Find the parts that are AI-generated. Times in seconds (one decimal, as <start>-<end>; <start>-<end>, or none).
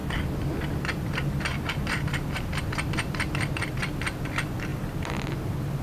0.0-3.5; 4.7-5.2